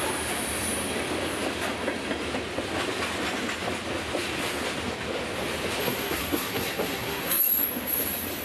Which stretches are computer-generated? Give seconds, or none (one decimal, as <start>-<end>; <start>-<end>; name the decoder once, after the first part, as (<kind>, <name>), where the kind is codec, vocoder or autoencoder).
5.8-7.4 (codec, SNAC)